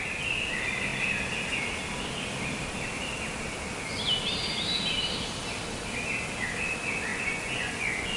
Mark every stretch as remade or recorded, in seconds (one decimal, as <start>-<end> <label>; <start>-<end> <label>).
0.0-7.1 recorded; 7.1-8.2 remade